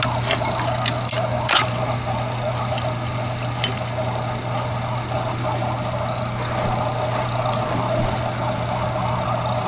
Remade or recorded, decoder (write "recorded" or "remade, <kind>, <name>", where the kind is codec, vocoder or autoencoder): recorded